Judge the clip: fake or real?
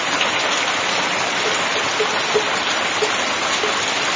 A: real